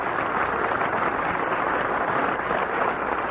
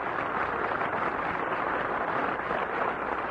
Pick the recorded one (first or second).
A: first